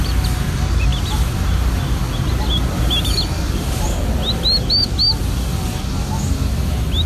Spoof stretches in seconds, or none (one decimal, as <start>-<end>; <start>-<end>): none